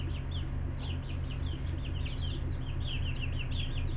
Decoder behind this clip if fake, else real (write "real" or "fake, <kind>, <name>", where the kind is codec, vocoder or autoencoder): real